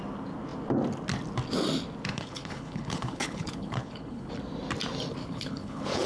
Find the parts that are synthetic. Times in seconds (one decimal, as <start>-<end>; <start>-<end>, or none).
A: 2.1-4.3; 5.2-6.1